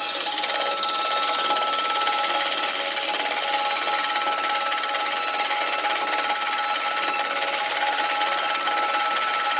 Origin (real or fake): real